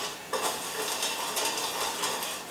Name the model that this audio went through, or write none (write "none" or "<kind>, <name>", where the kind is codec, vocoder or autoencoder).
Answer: none